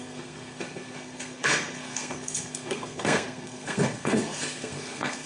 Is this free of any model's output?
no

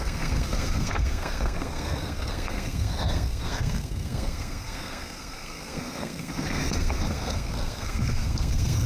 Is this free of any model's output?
no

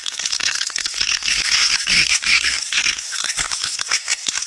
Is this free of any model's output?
no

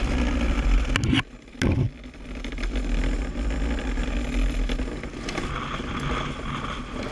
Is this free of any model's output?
yes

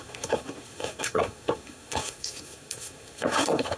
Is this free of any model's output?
no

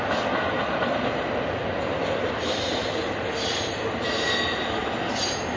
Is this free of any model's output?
yes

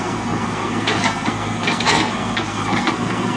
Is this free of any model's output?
no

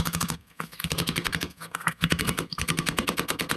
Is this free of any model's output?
no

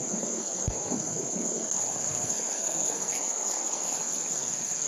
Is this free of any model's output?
no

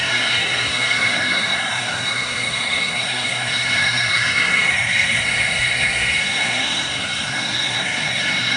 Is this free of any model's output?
no